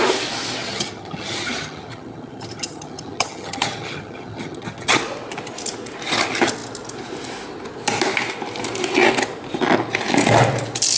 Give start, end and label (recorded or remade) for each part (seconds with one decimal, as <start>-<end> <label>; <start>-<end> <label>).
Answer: 0.0-0.6 recorded; 0.6-5.0 remade; 5.0-11.0 recorded